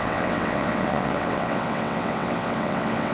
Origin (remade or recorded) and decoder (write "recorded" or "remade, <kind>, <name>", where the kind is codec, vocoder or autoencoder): remade, vocoder, WaveNeXt